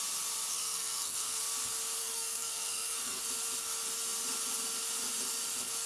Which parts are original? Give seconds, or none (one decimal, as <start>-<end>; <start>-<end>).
0.0-0.5; 1.4-2.0; 3.2-5.9